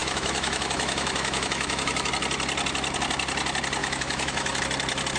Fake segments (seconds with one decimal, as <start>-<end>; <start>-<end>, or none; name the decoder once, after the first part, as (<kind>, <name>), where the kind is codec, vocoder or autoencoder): 0.0-2.1 (autoencoder, DAC-VAE); 3.8-4.6